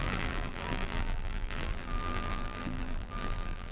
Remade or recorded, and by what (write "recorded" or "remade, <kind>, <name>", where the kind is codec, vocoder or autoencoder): remade, vocoder, BigVGAN v2